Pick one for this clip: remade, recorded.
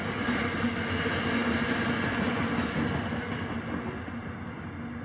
recorded